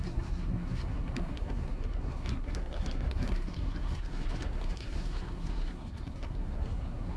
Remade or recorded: remade